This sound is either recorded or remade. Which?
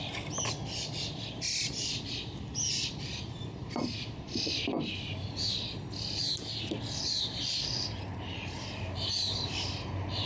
recorded